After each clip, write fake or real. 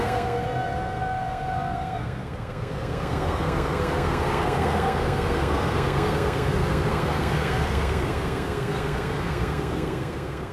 fake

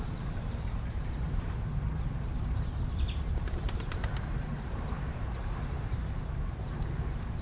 fake